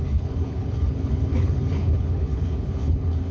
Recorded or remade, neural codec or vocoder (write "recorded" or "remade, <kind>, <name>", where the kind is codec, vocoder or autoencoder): remade, codec, HILCodec